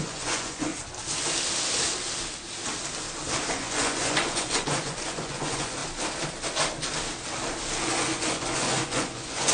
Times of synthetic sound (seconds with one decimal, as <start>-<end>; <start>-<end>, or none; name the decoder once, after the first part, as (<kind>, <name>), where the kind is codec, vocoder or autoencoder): 0.0-0.7 (vocoder, Vocos); 3.5-5.8; 7.8-9.5